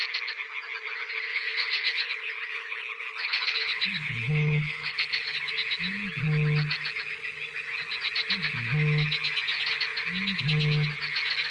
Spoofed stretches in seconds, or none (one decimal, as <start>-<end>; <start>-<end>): 1.3-5.5